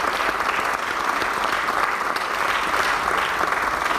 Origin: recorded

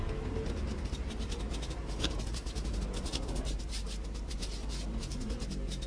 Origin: recorded